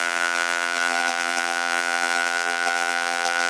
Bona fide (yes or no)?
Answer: no